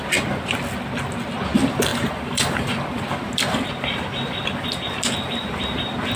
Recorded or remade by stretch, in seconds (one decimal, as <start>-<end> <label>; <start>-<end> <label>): 0.0-1.9 recorded; 1.9-3.0 remade; 3.0-6.2 recorded